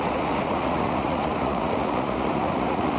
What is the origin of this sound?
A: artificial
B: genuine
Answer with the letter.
A